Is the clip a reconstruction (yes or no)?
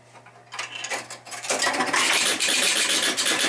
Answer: no